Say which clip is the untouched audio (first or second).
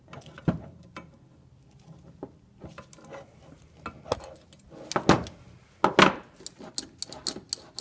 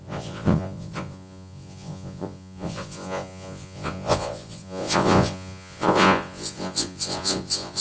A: first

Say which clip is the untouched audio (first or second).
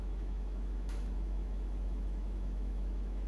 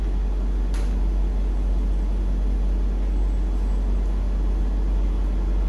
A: second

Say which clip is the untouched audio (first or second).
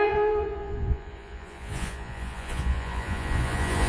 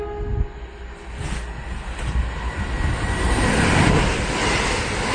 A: second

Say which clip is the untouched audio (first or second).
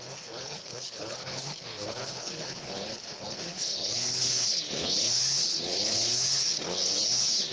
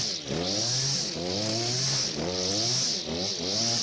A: second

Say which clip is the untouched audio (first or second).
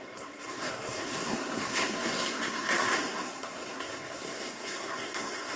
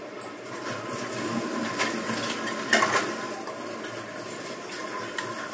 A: second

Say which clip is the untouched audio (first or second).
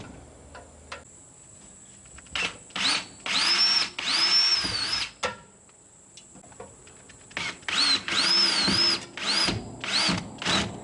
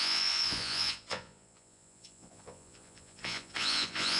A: first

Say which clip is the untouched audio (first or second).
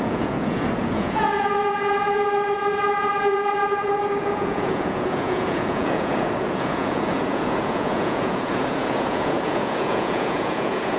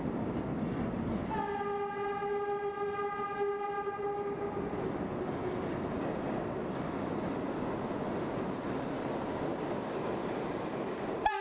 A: second